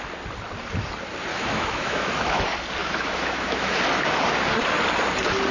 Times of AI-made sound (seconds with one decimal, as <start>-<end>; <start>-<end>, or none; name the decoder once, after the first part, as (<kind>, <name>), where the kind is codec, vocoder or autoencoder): 1.3-2.4 (autoencoder, DAC-VAE); 2.8-3.8